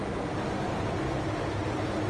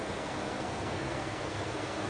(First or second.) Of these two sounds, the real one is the first